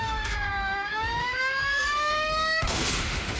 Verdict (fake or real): fake